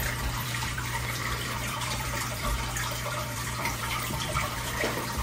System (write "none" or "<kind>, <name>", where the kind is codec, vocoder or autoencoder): vocoder, BigVGAN v2